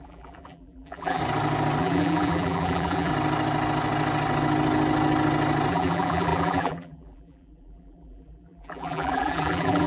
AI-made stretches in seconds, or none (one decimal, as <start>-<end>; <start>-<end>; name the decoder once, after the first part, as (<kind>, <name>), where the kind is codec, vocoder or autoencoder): 0.0-1.2 (vocoder, BigVGAN v2); 1.8-3.1; 5.7-9.9